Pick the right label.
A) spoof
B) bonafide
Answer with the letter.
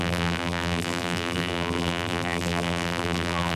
A